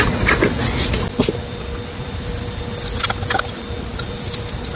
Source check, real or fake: real